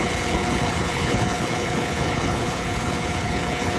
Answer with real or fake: fake